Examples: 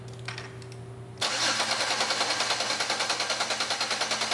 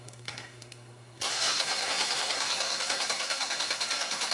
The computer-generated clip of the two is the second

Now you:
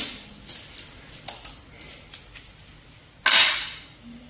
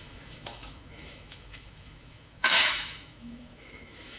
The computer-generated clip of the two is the second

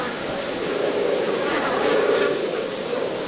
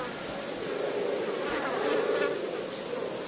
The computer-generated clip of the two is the first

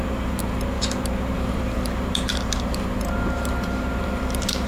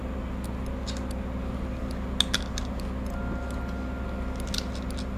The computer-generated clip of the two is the first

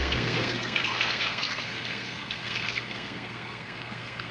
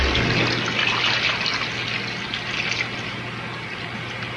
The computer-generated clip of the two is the first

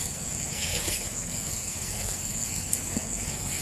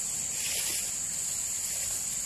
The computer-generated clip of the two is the first